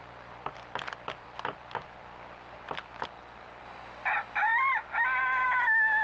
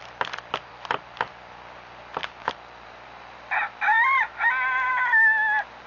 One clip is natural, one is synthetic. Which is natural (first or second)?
second